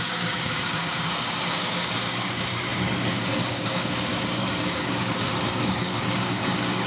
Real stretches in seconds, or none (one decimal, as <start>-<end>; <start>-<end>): none